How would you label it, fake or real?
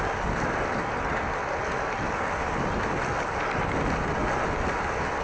real